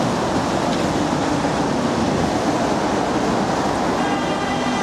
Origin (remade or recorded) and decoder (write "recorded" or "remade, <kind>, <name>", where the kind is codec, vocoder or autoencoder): recorded